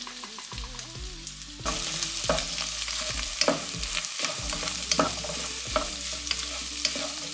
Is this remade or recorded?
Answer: recorded